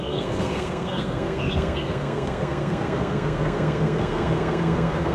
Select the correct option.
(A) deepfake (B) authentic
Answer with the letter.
A